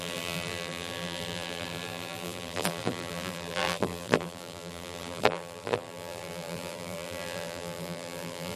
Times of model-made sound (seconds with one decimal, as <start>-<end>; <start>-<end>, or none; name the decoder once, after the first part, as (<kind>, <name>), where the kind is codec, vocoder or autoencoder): 0.0-8.6 (vocoder, BigVGAN v2)